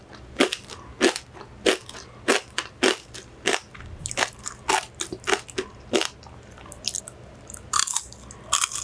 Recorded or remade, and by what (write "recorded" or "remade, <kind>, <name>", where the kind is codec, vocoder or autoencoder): recorded